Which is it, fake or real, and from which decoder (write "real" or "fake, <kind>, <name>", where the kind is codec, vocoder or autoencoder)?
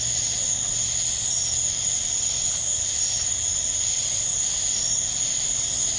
real